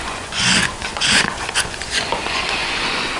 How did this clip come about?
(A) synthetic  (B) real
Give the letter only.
A